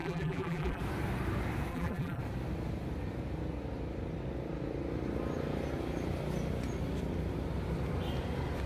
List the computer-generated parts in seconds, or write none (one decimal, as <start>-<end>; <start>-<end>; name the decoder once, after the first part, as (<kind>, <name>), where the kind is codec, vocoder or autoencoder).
0.0-0.8 (vocoder, BigVGAN v2); 1.7-2.2